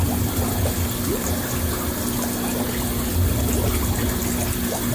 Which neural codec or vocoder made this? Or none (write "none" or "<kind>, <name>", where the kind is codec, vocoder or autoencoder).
none